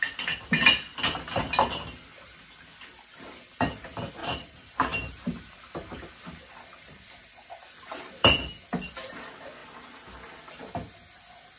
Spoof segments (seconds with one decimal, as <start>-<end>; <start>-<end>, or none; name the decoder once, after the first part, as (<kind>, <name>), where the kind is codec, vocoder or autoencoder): 4.2-6.1 (vocoder, BigVGAN v2)